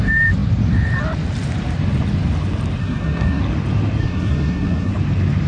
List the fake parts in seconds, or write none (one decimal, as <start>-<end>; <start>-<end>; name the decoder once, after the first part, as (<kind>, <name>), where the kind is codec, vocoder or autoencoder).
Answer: 2.8-3.4 (codec, SNAC); 4.0-4.9